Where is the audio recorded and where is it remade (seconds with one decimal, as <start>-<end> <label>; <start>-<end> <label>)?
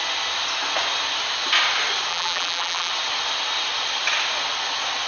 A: 0.0-2.1 recorded; 2.1-2.9 remade; 2.9-5.1 recorded